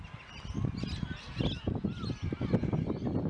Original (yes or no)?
yes